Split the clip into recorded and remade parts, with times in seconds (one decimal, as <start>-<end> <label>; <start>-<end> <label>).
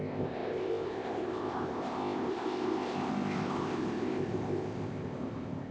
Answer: 0.0-5.7 remade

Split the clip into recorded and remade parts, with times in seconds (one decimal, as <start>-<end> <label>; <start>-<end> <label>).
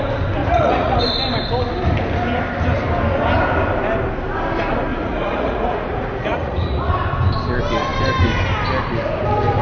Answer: 0.0-0.4 recorded; 0.4-1.0 remade; 1.0-4.9 recorded; 4.9-6.9 remade; 6.9-9.6 recorded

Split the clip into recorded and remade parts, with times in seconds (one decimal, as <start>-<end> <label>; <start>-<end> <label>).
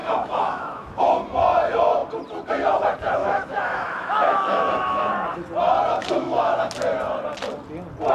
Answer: 0.0-1.0 remade; 1.0-3.2 recorded; 3.2-5.1 remade; 5.1-6.0 recorded; 6.0-6.6 remade; 6.6-8.1 recorded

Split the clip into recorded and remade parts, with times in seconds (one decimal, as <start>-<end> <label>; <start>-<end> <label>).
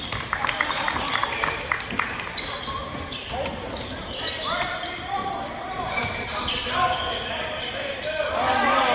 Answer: 0.0-2.8 recorded; 2.8-6.4 remade; 6.4-8.9 recorded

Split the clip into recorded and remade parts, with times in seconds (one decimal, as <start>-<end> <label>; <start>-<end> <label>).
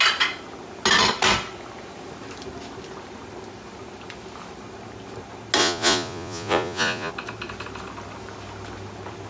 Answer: 0.0-5.6 recorded; 5.6-7.1 remade; 7.1-9.3 recorded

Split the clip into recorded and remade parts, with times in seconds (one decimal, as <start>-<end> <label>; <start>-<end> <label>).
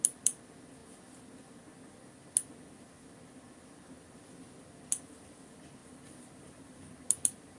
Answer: 0.0-5.8 recorded; 5.8-7.0 remade; 7.0-7.6 recorded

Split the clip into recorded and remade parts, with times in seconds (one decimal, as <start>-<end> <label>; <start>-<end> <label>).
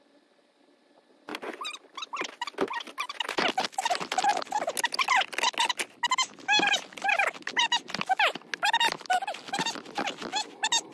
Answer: 0.0-10.9 recorded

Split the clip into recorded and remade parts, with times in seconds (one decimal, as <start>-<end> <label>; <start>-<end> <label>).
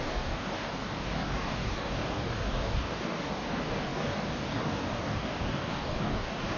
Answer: 0.0-6.6 remade